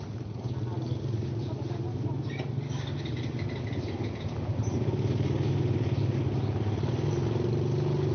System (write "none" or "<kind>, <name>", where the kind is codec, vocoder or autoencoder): none